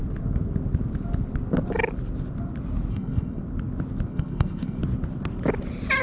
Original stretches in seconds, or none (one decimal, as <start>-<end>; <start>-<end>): 0.0-2.9; 3.4-4.1; 4.8-6.0